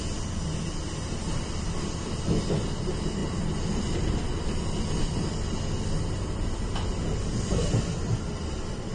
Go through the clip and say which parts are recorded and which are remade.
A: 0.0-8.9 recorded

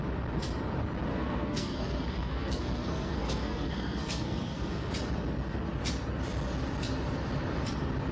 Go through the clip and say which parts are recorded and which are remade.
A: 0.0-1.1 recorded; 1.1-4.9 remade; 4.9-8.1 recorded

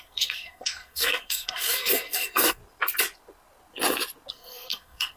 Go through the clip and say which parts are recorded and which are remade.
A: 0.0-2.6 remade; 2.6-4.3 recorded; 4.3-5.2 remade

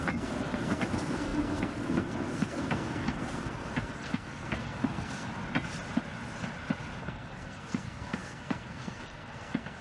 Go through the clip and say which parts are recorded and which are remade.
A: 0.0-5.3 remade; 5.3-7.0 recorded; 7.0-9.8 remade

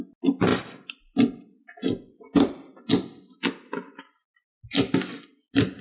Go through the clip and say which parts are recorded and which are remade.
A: 0.0-5.8 recorded